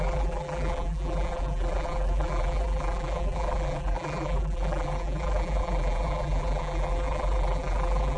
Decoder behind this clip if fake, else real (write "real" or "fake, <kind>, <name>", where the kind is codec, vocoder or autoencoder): fake, vocoder, BigVGAN v2